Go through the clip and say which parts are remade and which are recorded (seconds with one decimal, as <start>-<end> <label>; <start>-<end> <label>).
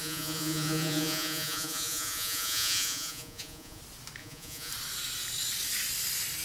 0.0-3.8 remade; 3.8-4.2 recorded; 4.2-4.7 remade; 4.7-6.4 recorded